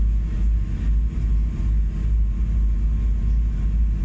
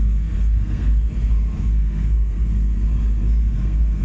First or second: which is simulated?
second